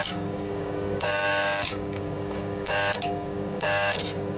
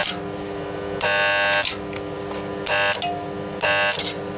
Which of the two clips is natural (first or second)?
second